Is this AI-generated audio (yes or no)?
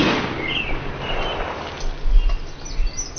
no